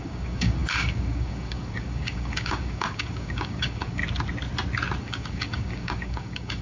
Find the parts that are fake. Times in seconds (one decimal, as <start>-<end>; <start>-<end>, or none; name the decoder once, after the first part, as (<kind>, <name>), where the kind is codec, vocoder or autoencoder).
0.0-4.0 (codec, DAC); 5.0-6.6